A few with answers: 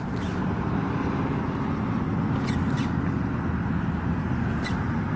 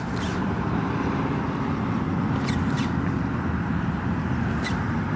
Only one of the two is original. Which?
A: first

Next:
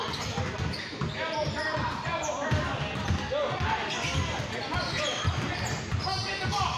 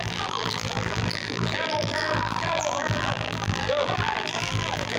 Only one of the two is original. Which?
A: first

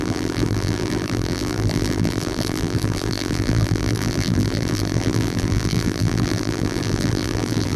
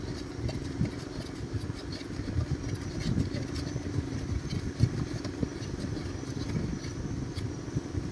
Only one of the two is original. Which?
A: second